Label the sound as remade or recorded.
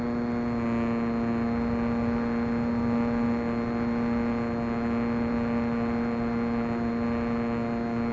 recorded